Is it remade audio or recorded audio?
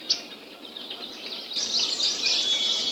recorded